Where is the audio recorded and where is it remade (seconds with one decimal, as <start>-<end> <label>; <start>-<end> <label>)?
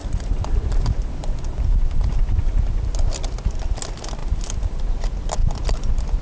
0.0-2.5 remade; 2.5-4.2 recorded; 4.2-4.8 remade; 4.8-6.2 recorded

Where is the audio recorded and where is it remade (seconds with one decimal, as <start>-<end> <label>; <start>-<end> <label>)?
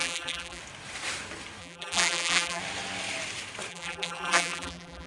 0.0-0.6 remade; 0.6-1.6 recorded; 1.6-2.6 remade; 2.6-3.7 recorded; 3.7-5.1 remade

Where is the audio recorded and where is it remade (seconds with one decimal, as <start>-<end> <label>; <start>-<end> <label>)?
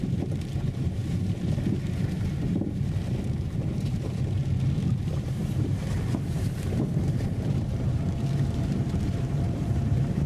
0.0-4.4 remade; 4.4-5.2 recorded; 5.2-10.3 remade